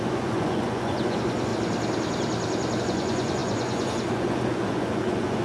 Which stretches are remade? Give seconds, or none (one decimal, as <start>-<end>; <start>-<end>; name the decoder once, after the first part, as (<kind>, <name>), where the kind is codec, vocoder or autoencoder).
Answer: 0.0-1.5 (vocoder, Vocos); 2.8-5.4